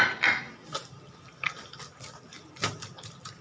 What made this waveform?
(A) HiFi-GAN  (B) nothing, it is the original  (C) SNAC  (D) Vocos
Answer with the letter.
B